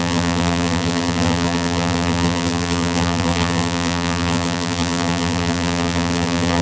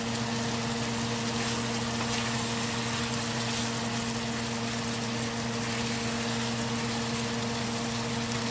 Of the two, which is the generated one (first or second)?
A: first